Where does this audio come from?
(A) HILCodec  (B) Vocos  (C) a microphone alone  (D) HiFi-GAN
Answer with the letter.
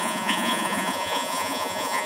B